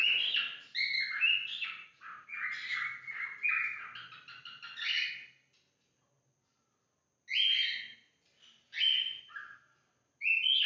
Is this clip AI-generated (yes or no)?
no